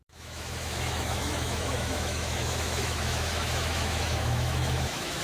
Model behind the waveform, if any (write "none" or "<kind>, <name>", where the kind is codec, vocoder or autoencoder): autoencoder, DAC-VAE